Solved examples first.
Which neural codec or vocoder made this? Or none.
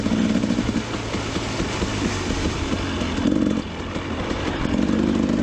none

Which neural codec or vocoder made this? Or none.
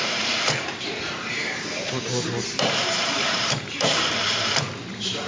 vocoder, BigVGAN v2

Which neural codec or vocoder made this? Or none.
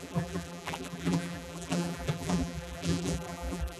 vocoder, BigVGAN v2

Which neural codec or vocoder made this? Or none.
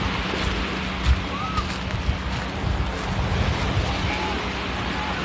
none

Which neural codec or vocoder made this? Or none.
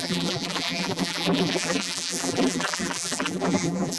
vocoder, BigVGAN v2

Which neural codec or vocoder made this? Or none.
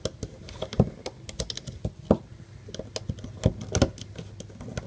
none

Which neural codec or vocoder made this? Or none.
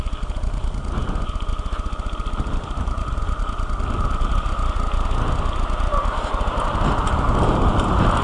vocoder, BigVGAN v2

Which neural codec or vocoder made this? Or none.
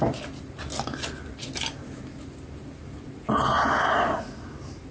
none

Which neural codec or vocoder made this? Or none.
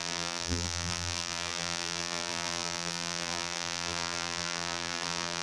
vocoder, BigVGAN v2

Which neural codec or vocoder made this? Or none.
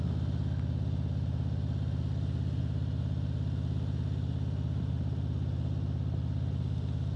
none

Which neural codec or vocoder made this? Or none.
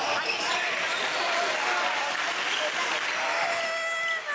none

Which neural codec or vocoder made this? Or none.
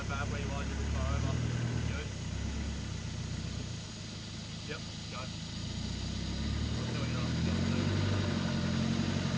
none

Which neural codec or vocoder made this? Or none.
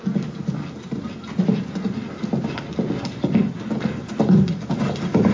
none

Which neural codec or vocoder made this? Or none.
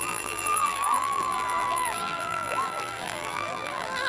vocoder, BigVGAN v2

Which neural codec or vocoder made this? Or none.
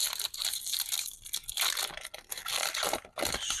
none